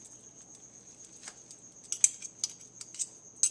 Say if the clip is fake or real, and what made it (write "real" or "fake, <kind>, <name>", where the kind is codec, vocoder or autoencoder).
real